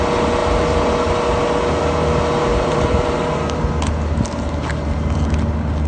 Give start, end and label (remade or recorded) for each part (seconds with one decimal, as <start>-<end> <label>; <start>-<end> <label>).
0.0-2.5 recorded; 2.5-3.7 remade; 3.7-5.9 recorded